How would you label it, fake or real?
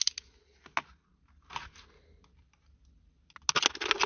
real